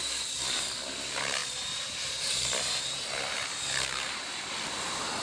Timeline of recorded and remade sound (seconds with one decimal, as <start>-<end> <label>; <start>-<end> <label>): 0.0-5.2 remade